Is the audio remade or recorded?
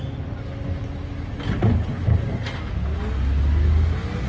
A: recorded